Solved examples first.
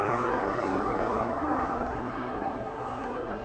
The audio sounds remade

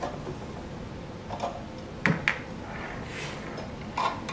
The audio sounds recorded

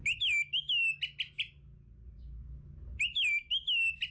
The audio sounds recorded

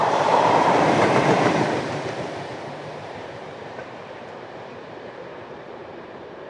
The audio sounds remade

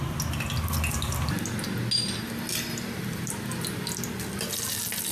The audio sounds recorded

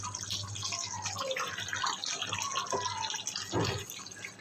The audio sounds recorded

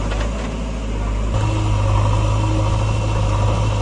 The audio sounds recorded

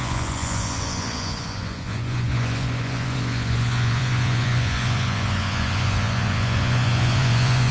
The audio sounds remade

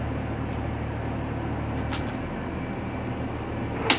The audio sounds recorded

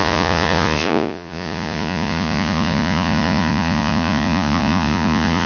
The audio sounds remade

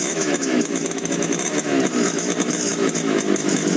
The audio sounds remade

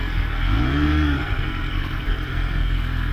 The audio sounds remade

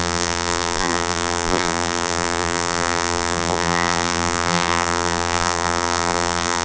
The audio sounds remade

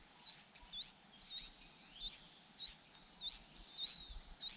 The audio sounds recorded